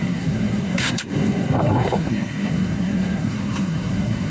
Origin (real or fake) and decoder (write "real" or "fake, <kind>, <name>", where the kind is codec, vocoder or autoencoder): fake, codec, SNAC